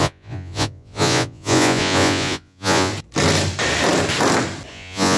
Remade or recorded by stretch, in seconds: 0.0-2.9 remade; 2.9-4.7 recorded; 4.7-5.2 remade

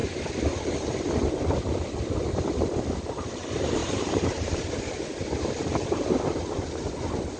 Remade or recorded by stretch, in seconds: 0.0-3.8 recorded; 3.8-4.7 remade; 4.7-7.4 recorded

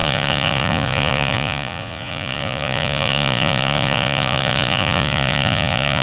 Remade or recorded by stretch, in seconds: 0.0-6.0 remade

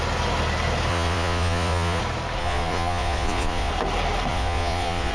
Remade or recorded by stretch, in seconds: 0.0-0.9 recorded; 0.9-2.0 remade; 2.0-2.4 recorded; 2.4-3.7 remade; 3.7-4.3 recorded; 4.3-5.1 remade

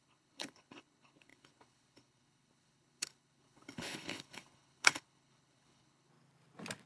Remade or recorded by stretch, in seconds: 0.0-6.1 remade; 6.1-6.9 recorded

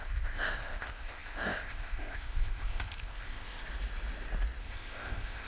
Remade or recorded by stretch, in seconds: 0.0-3.6 remade; 3.6-4.6 recorded; 4.6-5.5 remade

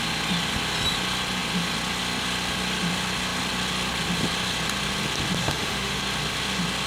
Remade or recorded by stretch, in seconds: 0.0-5.4 recorded; 5.4-6.0 remade; 6.0-6.9 recorded